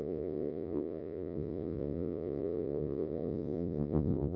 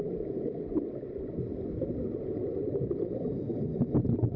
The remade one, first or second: first